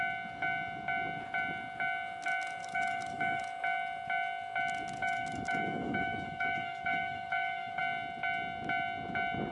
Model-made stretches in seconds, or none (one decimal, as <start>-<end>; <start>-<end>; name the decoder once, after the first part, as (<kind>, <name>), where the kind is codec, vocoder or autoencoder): 2.6-3.4 (autoencoder, DAC-VAE); 5.0-7.8